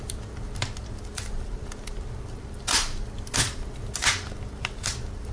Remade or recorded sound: recorded